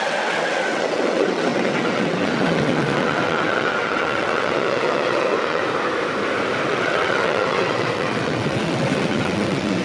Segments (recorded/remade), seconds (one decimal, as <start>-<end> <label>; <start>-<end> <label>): 0.0-5.6 remade; 5.6-6.7 recorded; 6.7-9.8 remade